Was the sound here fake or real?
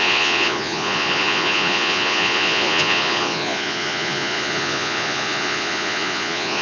fake